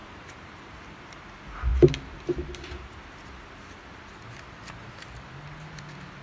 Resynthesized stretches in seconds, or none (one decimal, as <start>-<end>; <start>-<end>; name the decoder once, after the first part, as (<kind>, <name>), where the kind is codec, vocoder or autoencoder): 0.0-1.0 (vocoder, BigVGAN v2)